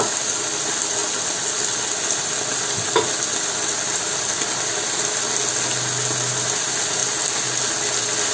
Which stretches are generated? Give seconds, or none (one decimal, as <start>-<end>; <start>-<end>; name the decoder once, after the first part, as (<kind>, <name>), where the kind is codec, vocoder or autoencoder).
none